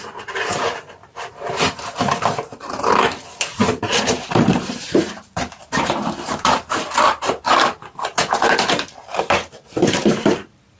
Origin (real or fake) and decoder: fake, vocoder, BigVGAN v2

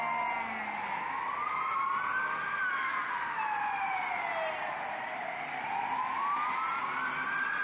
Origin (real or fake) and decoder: real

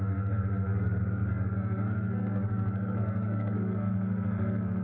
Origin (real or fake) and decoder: fake, codec, SNAC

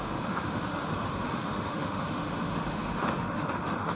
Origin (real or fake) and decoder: fake, autoencoder, DAC-VAE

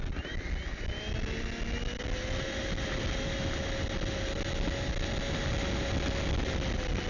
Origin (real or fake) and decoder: real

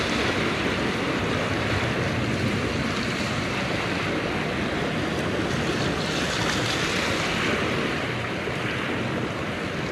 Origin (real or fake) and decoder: real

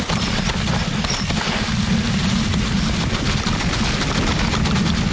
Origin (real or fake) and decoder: real